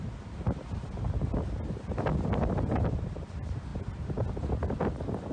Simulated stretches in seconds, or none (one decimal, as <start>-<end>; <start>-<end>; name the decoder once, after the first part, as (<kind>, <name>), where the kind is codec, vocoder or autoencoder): none